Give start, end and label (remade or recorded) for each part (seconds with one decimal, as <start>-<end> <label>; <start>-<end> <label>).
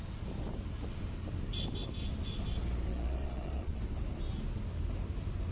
0.0-2.9 recorded; 2.9-3.8 remade; 3.8-5.5 recorded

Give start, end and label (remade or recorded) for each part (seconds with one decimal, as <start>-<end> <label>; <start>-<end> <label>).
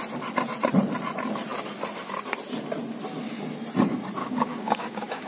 0.0-4.2 recorded; 4.2-5.3 remade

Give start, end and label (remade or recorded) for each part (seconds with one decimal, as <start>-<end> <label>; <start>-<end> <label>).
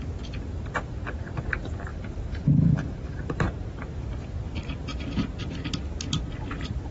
0.0-1.9 recorded; 1.9-4.4 remade; 4.4-6.9 recorded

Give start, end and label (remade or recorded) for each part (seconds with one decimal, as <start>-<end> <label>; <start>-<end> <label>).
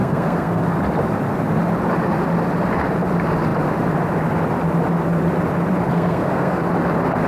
0.0-0.6 remade; 0.6-5.9 recorded; 5.9-6.6 remade; 6.6-7.3 recorded